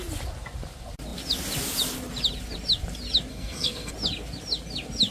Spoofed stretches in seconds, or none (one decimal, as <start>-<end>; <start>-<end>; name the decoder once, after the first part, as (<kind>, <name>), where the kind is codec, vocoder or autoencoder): 3.3-3.9 (codec, SNAC)